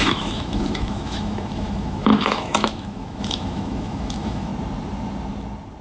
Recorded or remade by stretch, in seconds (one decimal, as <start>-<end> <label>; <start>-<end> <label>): 0.0-4.5 remade; 4.5-5.8 recorded